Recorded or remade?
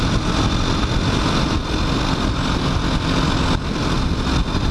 recorded